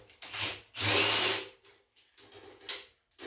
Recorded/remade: recorded